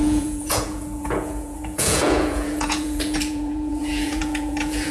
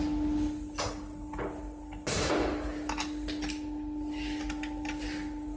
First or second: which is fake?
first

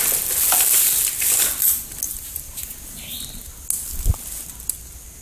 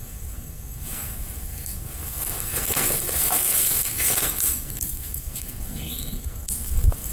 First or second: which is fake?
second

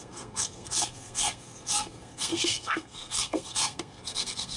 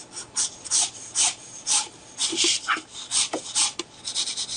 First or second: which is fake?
first